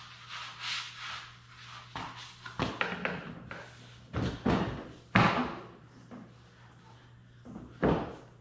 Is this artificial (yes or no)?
no